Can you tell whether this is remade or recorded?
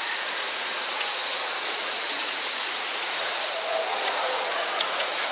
remade